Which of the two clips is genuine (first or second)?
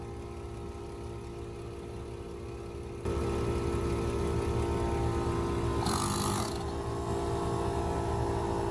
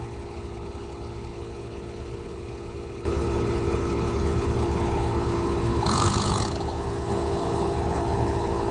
first